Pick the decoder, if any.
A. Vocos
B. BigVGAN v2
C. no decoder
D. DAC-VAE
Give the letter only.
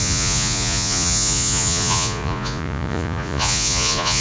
A